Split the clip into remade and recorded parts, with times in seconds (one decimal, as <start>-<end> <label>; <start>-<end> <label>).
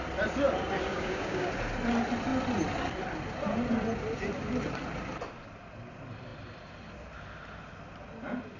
0.0-0.9 recorded; 0.9-1.5 remade; 1.5-8.6 recorded